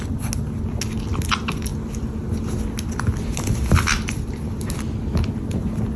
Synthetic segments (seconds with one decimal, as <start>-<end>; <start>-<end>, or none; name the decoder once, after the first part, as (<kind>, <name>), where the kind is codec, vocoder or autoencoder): none